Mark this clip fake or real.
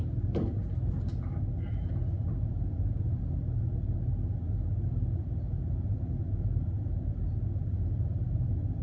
real